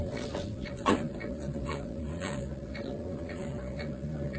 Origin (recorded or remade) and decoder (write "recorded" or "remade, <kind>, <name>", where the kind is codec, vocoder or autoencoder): remade, vocoder, Vocos